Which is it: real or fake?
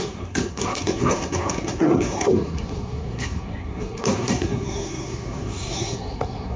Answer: fake